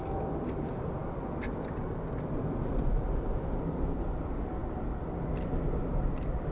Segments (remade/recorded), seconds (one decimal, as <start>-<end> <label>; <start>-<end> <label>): 0.0-6.5 recorded